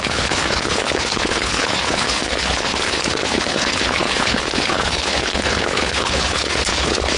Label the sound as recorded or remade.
remade